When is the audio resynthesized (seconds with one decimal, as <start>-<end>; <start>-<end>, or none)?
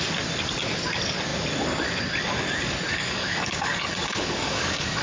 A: 2.9-5.0